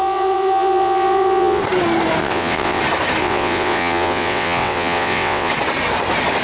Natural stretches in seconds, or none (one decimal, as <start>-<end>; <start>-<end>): 1.6-2.2; 2.8-3.2; 5.5-6.4